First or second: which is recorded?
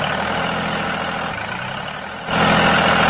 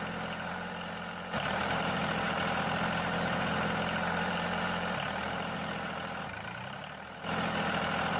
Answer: first